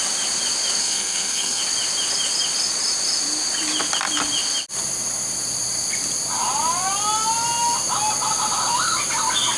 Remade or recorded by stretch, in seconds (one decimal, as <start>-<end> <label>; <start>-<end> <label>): 0.0-0.8 recorded; 0.8-1.6 remade; 1.6-9.6 recorded